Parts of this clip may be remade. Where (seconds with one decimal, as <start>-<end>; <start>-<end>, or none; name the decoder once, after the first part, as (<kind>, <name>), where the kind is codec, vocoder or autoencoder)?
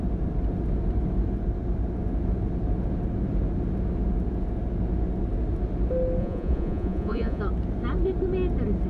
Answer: 6.2-7.4 (vocoder, Vocos)